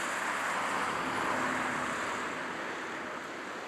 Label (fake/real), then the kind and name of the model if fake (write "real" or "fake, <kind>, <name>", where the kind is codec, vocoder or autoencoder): real